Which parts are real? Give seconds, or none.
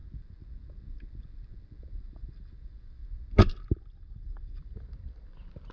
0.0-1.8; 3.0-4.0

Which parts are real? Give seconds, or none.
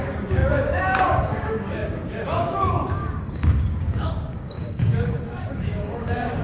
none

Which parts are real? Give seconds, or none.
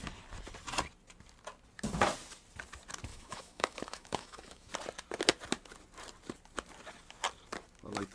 0.0-3.1; 4.7-8.1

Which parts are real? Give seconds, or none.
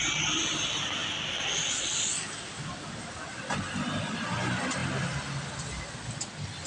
0.0-6.7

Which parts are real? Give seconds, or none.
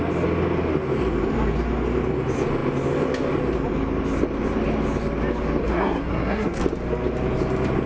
0.0-5.6; 6.6-7.9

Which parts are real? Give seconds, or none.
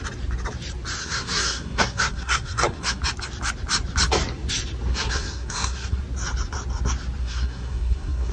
0.0-1.0; 3.0-4.9; 6.0-7.2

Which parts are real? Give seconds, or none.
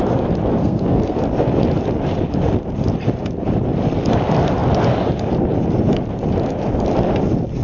0.0-0.6; 1.2-7.6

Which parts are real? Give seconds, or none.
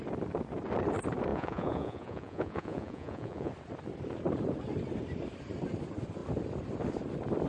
0.0-1.3; 3.5-7.5